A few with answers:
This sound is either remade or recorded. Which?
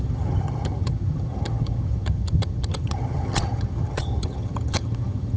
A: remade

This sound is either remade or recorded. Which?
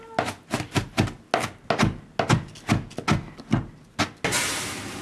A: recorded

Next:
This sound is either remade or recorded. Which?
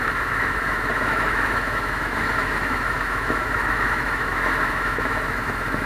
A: remade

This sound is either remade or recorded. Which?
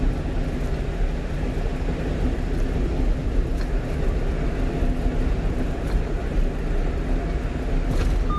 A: recorded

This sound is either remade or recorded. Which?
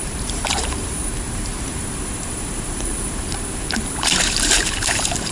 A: remade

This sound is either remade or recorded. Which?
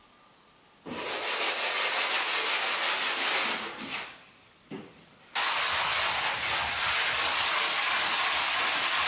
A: recorded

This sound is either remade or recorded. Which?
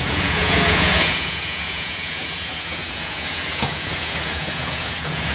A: remade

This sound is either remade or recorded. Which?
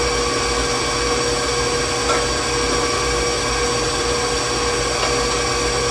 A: recorded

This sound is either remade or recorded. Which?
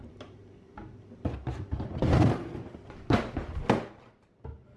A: recorded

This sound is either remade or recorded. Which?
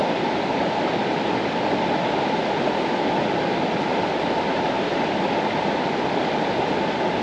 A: recorded